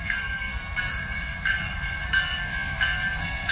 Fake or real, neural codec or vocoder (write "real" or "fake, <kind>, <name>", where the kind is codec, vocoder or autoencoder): fake, codec, SNAC